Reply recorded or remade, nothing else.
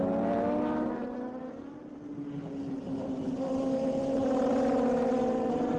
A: recorded